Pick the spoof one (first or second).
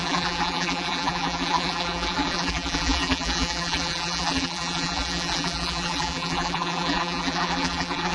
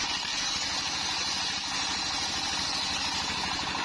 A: first